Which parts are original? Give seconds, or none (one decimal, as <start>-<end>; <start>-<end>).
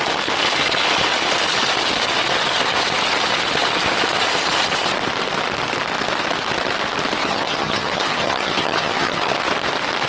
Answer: 0.0-7.2; 9.3-10.1